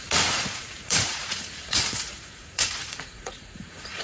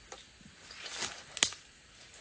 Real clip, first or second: second